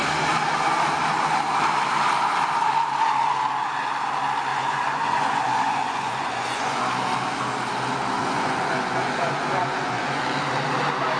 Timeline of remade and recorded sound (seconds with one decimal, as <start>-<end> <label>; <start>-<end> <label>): 0.0-4.5 recorded; 4.5-6.8 remade; 6.8-8.2 recorded; 8.2-10.2 remade; 10.2-11.2 recorded